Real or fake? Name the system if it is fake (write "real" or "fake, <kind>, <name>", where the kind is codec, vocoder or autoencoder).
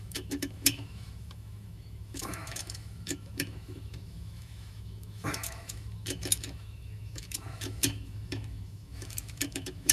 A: fake, autoencoder, DAC-VAE